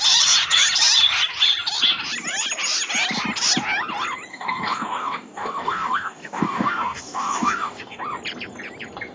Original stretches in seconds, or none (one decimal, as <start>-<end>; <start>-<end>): 0.0-4.3; 8.0-9.1